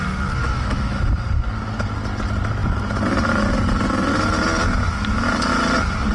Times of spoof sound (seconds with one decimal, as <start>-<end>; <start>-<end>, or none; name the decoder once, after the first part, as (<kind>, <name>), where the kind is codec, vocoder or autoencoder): 0.4-1.0 (autoencoder, DAC-VAE)